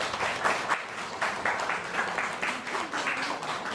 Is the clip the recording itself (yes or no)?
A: yes